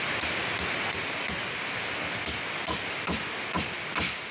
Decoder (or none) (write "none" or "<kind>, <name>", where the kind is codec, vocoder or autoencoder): none